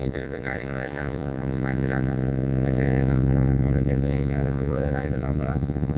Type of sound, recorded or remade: remade